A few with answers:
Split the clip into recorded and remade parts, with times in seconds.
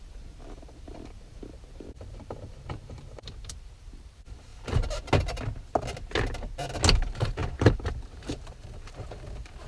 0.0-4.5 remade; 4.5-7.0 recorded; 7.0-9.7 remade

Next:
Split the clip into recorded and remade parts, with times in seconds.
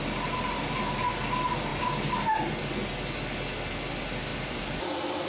0.0-4.3 recorded; 4.3-5.3 remade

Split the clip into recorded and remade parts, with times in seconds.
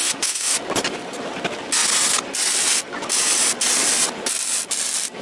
0.0-0.6 remade; 0.6-5.2 recorded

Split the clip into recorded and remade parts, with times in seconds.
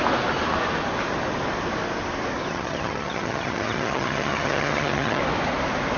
0.0-2.5 recorded; 2.5-5.2 remade; 5.2-6.0 recorded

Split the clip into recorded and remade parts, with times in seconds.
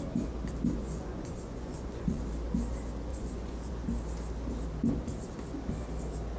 0.0-0.8 recorded; 0.8-2.2 remade; 2.2-3.1 recorded; 3.1-3.7 remade; 3.7-6.4 recorded